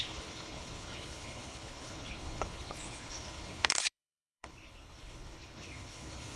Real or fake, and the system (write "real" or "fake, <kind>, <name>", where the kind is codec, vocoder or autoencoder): fake, codec, HILCodec